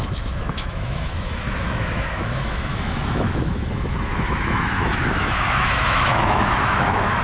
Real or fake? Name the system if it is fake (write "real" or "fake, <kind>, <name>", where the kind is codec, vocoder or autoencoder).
fake, autoencoder, DAC-VAE